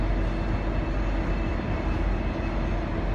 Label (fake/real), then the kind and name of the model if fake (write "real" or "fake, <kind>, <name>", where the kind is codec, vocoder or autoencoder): real